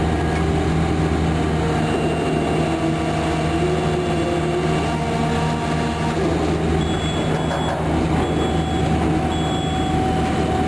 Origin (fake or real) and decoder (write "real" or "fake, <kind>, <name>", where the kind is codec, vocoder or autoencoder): real